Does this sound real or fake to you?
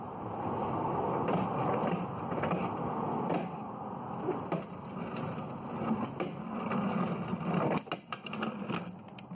real